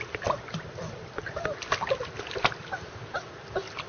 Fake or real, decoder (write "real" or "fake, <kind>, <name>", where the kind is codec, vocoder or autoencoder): real